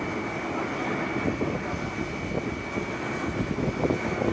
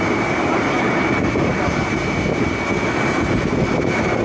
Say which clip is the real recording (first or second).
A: first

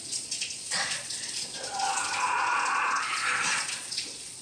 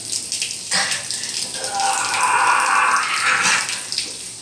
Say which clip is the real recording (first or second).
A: second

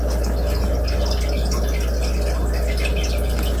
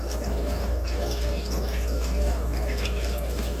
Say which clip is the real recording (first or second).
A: first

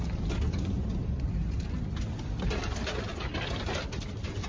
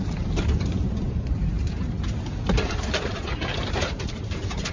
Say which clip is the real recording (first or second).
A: first